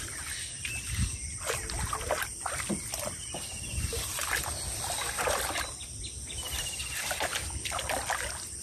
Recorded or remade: recorded